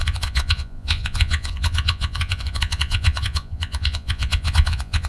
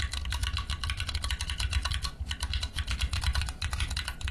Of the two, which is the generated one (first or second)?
first